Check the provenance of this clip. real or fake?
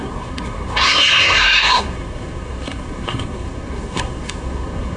fake